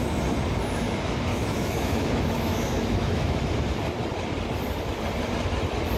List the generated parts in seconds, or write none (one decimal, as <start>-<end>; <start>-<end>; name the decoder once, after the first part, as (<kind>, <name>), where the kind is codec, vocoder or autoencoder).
1.3-3.4 (autoencoder, DAC-VAE)